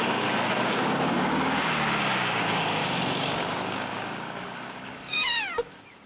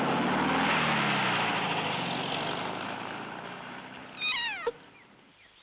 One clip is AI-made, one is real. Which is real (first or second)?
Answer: second